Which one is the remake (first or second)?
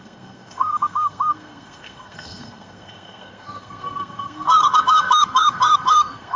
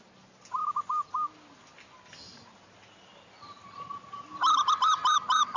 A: first